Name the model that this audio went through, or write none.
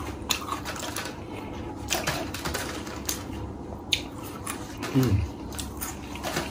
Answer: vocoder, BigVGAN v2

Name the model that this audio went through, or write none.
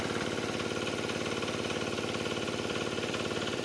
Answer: vocoder, BigVGAN v2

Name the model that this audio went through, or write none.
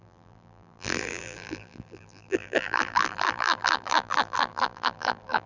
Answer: vocoder, BigVGAN v2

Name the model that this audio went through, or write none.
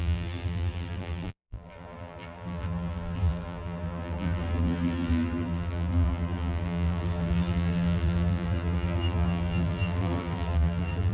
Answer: vocoder, BigVGAN v2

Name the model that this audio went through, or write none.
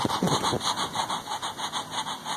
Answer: none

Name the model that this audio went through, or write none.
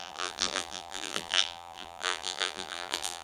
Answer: vocoder, BigVGAN v2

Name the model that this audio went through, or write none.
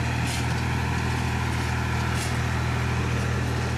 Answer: none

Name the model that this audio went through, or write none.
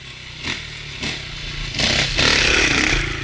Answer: none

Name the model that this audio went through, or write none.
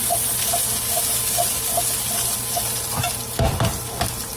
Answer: none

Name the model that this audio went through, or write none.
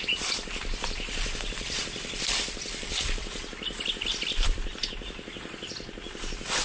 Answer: vocoder, BigVGAN v2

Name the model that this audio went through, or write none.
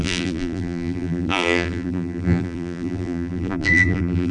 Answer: vocoder, BigVGAN v2